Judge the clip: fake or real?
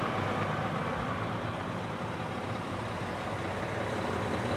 real